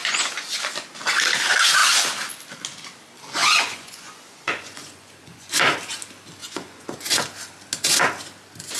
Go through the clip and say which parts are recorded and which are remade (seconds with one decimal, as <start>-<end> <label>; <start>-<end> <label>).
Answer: 0.0-0.6 remade; 0.6-3.4 recorded; 3.4-5.5 remade; 5.5-6.4 recorded; 6.4-7.2 remade; 7.2-8.8 recorded